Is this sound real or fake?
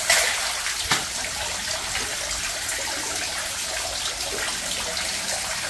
real